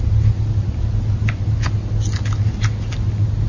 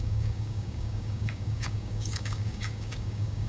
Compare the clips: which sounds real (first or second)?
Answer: first